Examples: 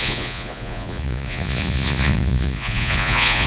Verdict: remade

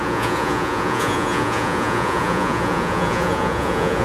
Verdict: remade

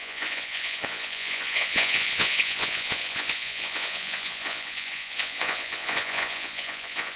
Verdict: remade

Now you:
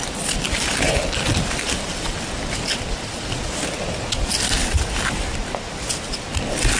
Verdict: recorded